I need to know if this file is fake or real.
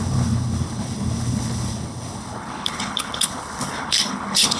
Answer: fake